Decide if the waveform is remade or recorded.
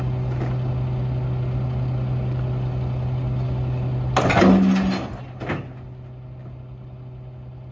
recorded